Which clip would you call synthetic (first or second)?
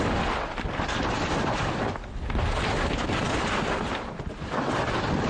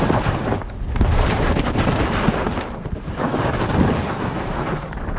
second